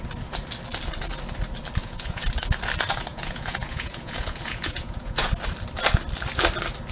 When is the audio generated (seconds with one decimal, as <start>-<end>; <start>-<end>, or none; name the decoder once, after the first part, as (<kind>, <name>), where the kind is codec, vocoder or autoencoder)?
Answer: 1.8-2.3 (vocoder, Vocos); 3.1-5.3